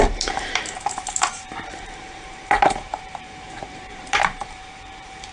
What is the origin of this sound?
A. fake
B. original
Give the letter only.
A